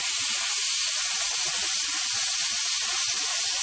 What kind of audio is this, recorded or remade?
recorded